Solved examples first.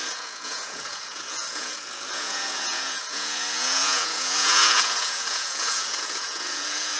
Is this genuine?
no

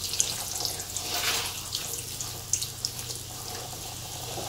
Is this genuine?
yes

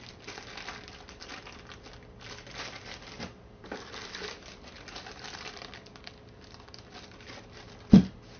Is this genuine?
no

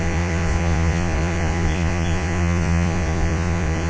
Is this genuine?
no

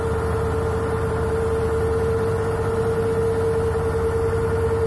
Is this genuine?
yes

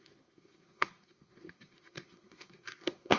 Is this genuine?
no